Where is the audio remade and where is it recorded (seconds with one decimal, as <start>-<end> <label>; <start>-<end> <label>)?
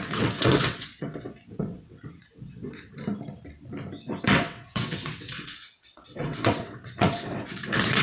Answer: 0.0-2.9 remade; 2.9-4.2 recorded; 4.2-8.0 remade